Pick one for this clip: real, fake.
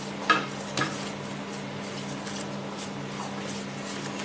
real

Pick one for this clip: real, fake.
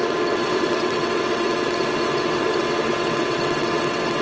fake